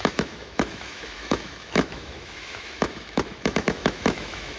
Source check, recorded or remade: remade